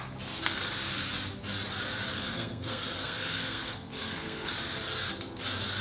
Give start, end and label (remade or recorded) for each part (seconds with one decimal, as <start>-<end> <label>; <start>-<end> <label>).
0.0-2.1 recorded; 2.1-4.5 remade; 4.5-5.8 recorded